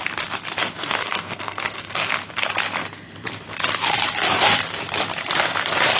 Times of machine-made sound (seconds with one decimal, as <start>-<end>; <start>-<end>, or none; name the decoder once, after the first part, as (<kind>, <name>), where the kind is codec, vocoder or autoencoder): 1.0-2.1 (codec, SNAC)